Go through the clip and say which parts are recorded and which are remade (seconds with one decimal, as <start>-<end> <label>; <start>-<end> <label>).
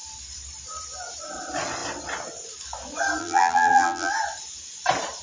0.0-3.2 recorded; 3.2-4.1 remade; 4.1-5.2 recorded